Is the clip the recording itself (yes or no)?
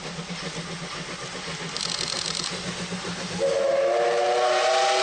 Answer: yes